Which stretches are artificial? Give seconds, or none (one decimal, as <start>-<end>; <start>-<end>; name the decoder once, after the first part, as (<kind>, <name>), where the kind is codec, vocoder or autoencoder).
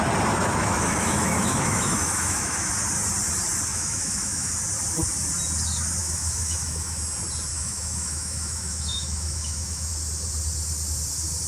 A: 0.6-2.7 (autoencoder, DAC-VAE); 3.7-4.5; 6.0-7.0; 7.5-9.9